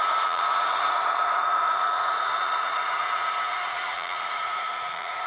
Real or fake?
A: fake